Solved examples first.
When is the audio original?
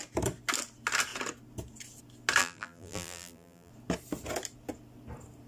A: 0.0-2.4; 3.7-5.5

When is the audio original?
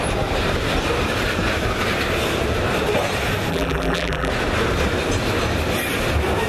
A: 0.0-3.5; 4.3-6.5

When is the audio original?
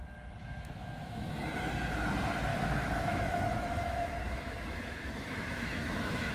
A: 0.0-0.4; 1.4-2.5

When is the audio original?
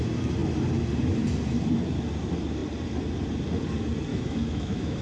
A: 0.0-4.1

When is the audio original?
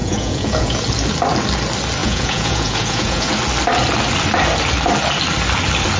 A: 0.8-2.0; 3.3-6.0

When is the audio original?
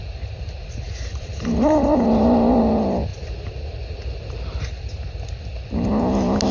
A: 0.0-1.1; 2.6-6.5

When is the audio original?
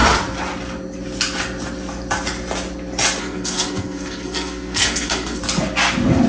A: 0.0-3.2; 5.4-6.3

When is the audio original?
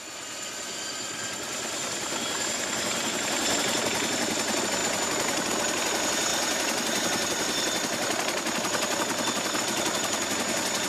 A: 0.0-10.9